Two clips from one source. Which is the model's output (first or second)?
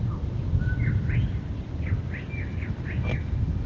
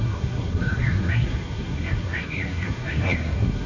second